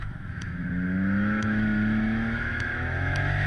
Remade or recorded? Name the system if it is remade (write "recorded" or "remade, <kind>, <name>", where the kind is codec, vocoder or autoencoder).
remade, autoencoder, DAC-VAE